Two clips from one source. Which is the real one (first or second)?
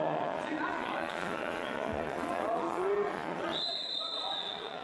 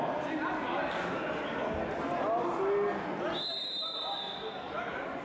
second